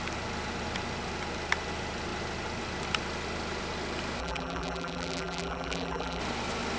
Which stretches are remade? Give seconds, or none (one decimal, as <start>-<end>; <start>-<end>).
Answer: 4.2-6.2